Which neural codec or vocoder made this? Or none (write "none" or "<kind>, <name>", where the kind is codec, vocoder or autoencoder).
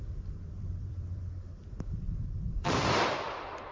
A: vocoder, BigVGAN v2